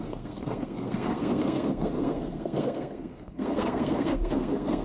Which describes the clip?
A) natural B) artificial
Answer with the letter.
B